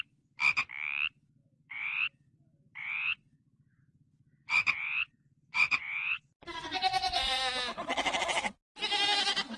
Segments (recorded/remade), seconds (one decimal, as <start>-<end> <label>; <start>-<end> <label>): 0.0-1.4 recorded; 1.4-3.8 remade; 3.8-4.4 recorded; 4.4-7.4 remade; 7.4-9.6 recorded